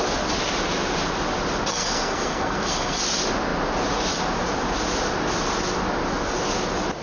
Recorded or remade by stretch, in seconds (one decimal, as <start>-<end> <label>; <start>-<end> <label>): 0.0-1.7 recorded; 1.7-3.0 remade; 3.0-7.0 recorded